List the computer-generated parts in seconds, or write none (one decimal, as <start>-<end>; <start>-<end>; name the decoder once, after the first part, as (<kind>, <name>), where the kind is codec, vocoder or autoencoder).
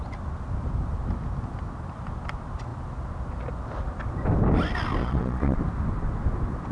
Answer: 5.0-5.6 (vocoder, Vocos)